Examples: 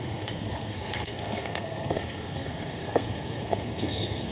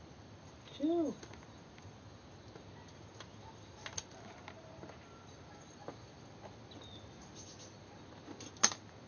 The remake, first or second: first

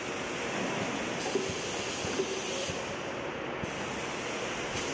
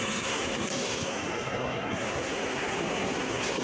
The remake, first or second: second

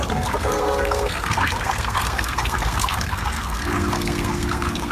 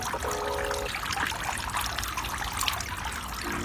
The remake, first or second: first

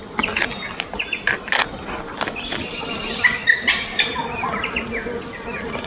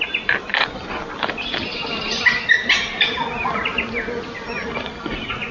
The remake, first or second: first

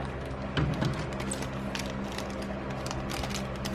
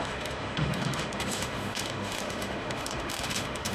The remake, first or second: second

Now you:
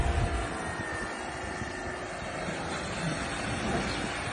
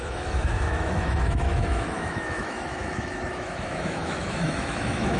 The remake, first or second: second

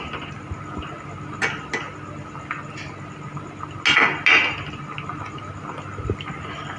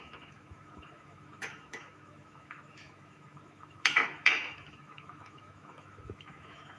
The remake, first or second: second